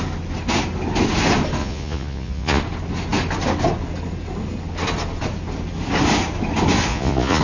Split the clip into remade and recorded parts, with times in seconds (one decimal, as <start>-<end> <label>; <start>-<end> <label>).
0.0-1.6 recorded; 1.6-2.6 remade; 2.6-6.9 recorded; 6.9-7.4 remade